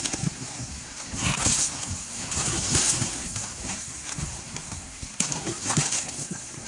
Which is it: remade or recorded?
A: remade